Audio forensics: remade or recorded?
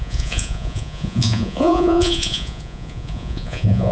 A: remade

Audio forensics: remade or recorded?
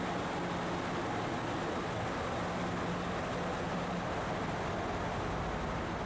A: recorded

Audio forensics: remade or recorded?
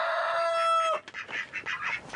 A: recorded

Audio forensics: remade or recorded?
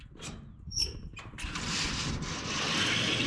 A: recorded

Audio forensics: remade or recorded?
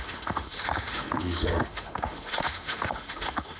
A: remade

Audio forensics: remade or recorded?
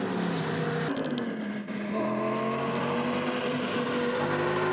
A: recorded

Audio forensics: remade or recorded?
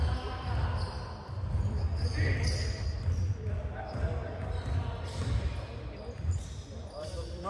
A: recorded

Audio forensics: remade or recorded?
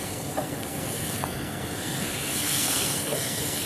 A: remade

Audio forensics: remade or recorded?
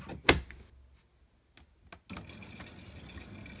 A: recorded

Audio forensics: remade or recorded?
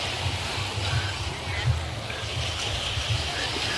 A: recorded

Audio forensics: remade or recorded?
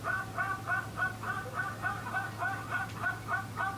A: recorded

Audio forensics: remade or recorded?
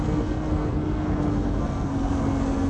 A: remade